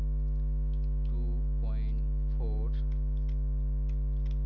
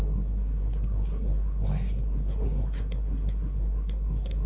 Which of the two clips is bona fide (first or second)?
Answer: first